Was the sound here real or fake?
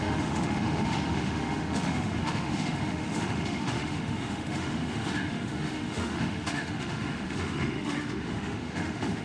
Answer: fake